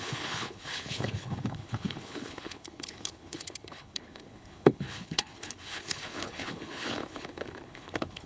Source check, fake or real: fake